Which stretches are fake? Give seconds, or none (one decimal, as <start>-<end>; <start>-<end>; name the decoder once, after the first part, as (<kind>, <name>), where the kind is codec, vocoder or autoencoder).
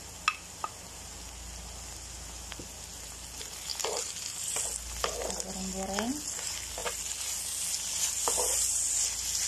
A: none